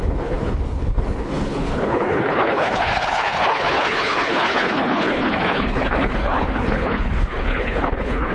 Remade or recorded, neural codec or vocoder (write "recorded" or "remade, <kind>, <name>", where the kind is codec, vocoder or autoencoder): remade, codec, HILCodec